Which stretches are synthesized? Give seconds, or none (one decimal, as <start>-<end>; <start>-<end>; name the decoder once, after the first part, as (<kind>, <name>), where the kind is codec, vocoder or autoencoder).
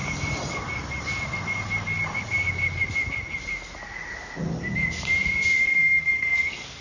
5.6-6.8 (codec, SNAC)